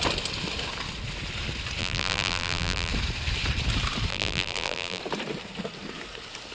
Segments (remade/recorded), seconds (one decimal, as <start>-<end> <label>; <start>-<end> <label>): 0.0-1.8 recorded; 1.8-2.9 remade; 2.9-4.1 recorded; 4.1-5.0 remade; 5.0-6.5 recorded